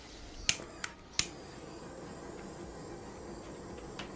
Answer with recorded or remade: recorded